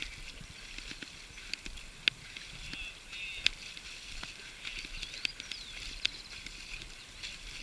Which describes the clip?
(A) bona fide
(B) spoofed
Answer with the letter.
A